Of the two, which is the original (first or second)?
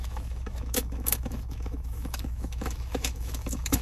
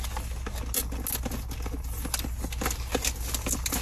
second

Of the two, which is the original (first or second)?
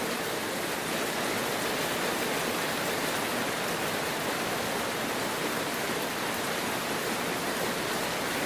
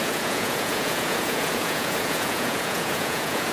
first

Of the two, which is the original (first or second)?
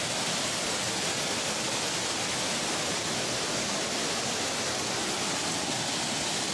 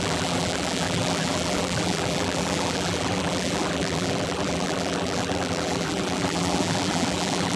first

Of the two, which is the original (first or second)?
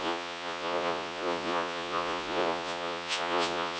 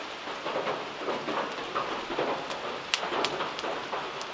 second